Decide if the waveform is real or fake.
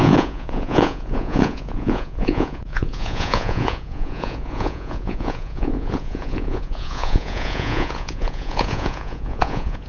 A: fake